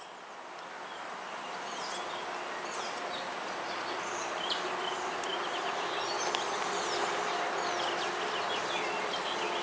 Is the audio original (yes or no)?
yes